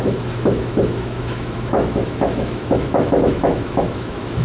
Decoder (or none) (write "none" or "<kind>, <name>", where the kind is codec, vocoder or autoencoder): autoencoder, DAC-VAE